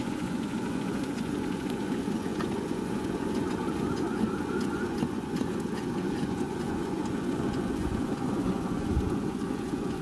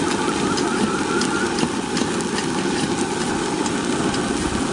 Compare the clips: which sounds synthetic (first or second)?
first